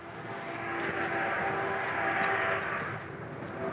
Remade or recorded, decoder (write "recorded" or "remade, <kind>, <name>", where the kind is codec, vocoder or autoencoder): recorded